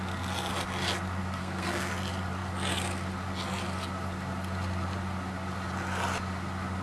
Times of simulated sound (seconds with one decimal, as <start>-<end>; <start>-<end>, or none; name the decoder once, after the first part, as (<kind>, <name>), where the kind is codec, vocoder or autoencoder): 1.4-1.9 (codec, SNAC)